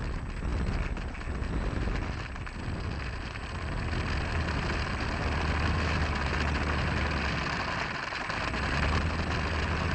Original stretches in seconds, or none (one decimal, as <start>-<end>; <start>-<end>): 0.0-9.9